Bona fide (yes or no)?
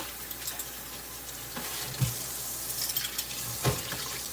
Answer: yes